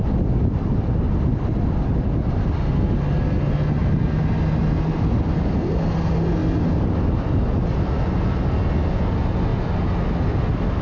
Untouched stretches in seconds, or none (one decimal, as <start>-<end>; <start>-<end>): 0.0-10.8